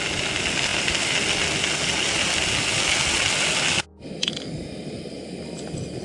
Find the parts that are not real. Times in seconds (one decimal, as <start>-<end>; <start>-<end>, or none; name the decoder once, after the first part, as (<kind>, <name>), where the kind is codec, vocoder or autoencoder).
none